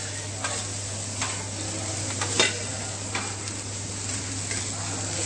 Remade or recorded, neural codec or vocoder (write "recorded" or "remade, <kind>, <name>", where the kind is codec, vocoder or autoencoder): recorded